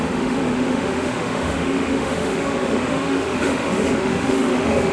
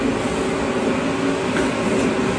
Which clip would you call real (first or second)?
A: second